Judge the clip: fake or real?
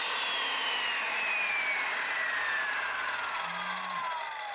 real